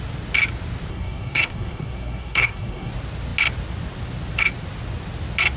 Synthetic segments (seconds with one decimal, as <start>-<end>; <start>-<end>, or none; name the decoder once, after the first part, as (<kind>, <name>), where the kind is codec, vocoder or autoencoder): 0.9-2.9 (codec, SNAC)